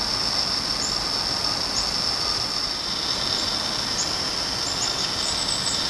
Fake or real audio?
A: real